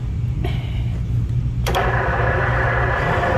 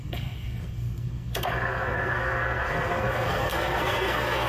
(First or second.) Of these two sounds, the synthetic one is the second